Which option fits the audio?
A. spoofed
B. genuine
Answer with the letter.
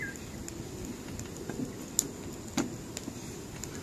B